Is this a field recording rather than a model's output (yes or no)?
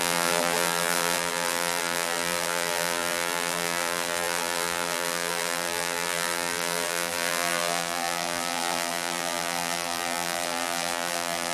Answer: no